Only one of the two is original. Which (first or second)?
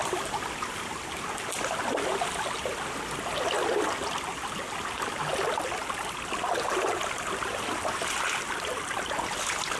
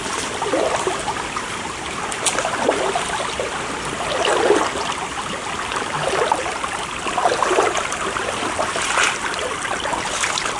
first